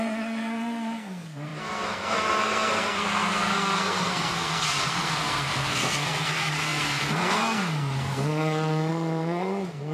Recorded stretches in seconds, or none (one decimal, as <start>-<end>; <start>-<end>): none